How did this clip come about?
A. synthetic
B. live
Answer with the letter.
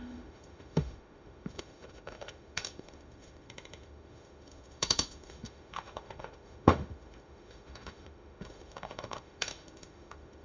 A